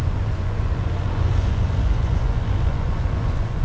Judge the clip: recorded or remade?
remade